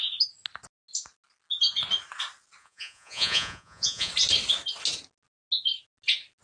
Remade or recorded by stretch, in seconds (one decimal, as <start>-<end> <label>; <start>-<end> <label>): 0.0-2.6 recorded; 2.6-4.1 remade; 4.1-6.4 recorded